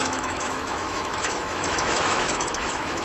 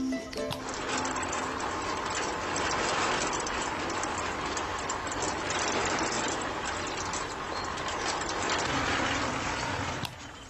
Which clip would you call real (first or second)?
second